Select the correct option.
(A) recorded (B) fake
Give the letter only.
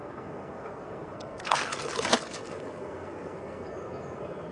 B